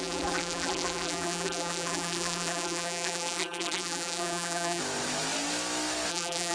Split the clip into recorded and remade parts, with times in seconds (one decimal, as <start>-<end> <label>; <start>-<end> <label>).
0.0-4.8 remade; 4.8-6.1 recorded; 6.1-6.5 remade